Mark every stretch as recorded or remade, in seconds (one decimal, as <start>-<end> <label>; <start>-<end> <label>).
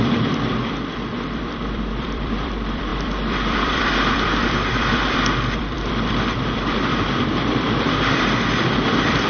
0.0-9.3 remade